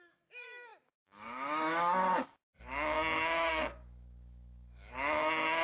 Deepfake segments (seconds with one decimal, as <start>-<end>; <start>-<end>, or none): 0.0-5.6

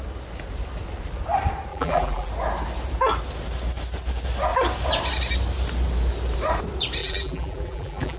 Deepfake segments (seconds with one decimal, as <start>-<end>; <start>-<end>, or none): 1.7-2.3; 7.0-8.2

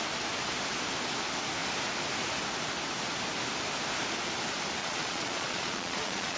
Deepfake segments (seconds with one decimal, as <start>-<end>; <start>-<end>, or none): 4.8-6.4

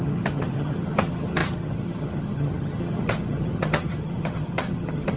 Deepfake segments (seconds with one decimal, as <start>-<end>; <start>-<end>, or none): 0.0-5.2

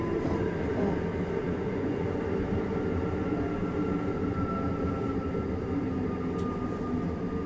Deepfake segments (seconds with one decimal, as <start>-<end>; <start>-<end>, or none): 1.4-2.2

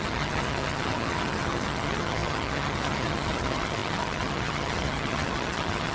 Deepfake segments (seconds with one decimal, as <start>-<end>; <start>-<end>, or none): 0.0-5.9